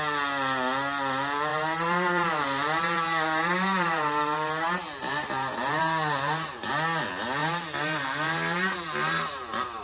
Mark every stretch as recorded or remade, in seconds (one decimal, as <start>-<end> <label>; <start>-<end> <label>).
0.0-1.5 recorded; 1.5-6.7 remade; 6.7-7.4 recorded; 7.4-9.8 remade